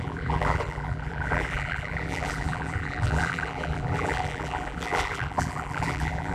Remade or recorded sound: remade